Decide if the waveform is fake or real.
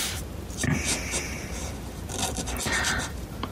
real